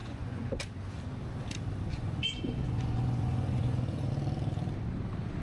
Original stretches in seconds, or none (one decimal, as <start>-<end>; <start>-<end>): 0.6-1.9; 4.1-5.4